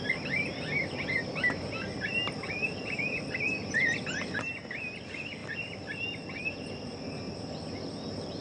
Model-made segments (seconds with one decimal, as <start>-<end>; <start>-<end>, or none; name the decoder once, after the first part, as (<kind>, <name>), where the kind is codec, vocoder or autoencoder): 5.4-6.4 (vocoder, BigVGAN v2)